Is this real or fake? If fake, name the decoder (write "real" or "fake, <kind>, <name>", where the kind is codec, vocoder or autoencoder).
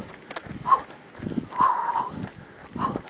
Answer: real